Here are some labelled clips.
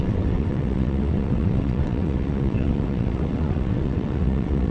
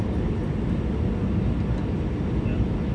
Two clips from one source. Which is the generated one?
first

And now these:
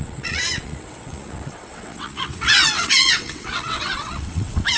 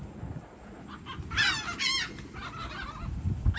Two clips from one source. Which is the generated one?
first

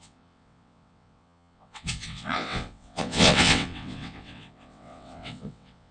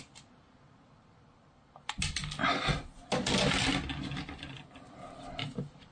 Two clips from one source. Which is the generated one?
first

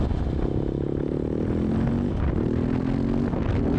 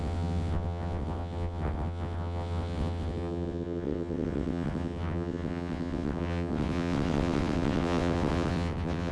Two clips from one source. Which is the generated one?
second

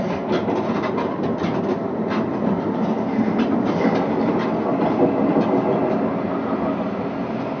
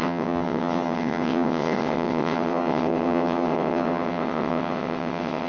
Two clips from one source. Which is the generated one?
second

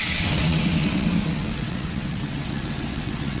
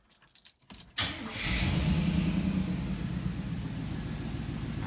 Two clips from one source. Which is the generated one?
first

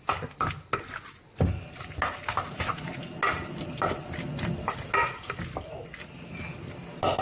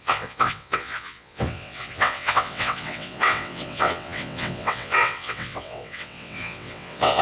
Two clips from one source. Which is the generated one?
second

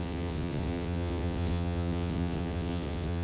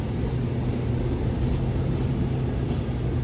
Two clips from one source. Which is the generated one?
first